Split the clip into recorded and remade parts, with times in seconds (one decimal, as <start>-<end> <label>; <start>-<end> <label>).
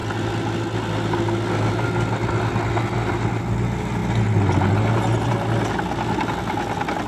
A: 0.0-7.1 recorded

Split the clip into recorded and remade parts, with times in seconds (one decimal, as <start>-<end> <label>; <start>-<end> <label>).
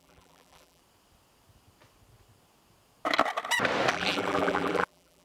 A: 0.0-0.8 remade; 0.8-3.9 recorded; 3.9-5.2 remade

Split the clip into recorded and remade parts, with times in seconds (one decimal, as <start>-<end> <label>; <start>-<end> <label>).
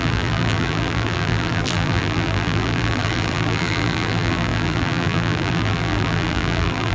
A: 0.0-6.9 remade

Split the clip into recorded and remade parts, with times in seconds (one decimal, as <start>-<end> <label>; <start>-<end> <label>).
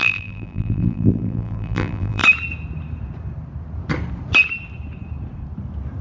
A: 0.0-2.2 remade; 2.2-6.0 recorded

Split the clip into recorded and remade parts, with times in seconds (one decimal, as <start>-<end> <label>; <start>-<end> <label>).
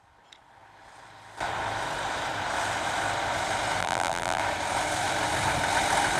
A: 0.0-3.8 recorded; 3.8-4.4 remade; 4.4-6.2 recorded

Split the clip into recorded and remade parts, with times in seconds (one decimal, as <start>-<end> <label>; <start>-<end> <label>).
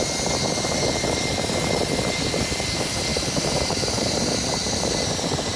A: 0.0-3.1 recorded; 3.1-4.9 remade; 4.9-5.6 recorded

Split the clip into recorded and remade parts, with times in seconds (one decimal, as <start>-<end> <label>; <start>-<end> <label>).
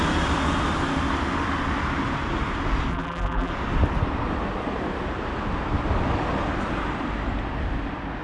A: 0.0-2.9 recorded; 2.9-3.5 remade; 3.5-8.2 recorded